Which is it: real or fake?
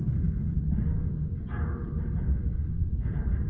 real